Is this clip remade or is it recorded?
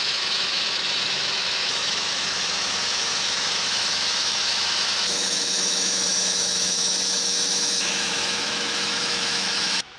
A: remade